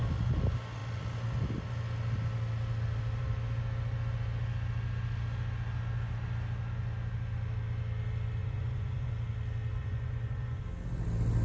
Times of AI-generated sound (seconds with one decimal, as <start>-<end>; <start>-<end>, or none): 8.4-9.1; 9.8-10.6